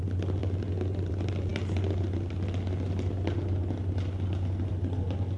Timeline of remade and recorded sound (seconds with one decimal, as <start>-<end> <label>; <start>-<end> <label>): 0.0-5.4 recorded

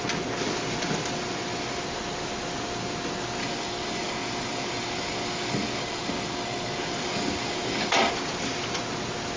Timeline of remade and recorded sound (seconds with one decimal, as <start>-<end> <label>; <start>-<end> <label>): 0.0-3.4 recorded; 3.4-8.1 remade; 8.1-9.4 recorded